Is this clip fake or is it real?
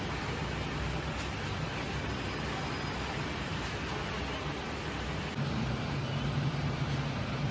real